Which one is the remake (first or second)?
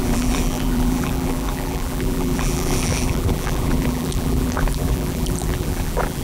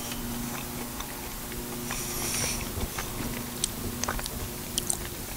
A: first